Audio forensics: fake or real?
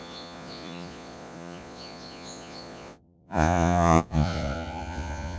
fake